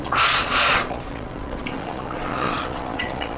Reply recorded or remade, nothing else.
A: remade